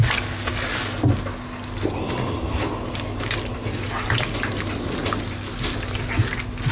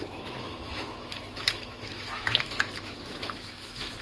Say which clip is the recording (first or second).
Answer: first